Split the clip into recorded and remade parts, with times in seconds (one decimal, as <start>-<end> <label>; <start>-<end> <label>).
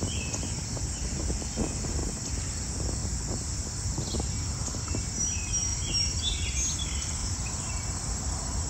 0.0-5.7 recorded; 5.7-6.3 remade; 6.3-7.2 recorded; 7.2-7.7 remade; 7.7-8.7 recorded